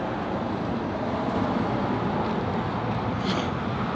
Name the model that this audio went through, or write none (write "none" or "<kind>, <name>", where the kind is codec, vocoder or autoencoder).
none